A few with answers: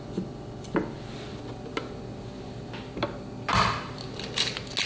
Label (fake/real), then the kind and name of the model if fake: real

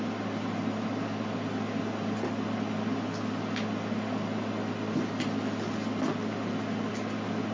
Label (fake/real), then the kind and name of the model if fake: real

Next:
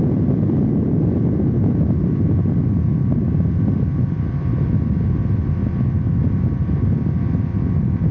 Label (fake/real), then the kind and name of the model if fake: real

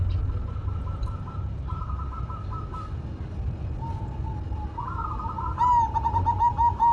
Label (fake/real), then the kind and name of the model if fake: real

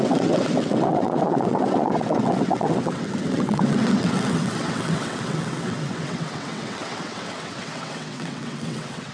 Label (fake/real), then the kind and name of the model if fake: fake, vocoder, WaveNeXt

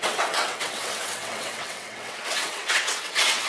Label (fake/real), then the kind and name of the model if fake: fake, vocoder, WaveNeXt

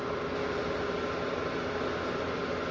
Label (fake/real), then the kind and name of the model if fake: real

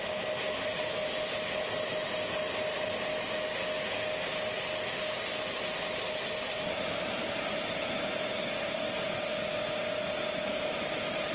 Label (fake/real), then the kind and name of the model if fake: real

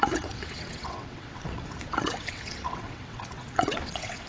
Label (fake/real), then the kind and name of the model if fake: fake, vocoder, WaveNeXt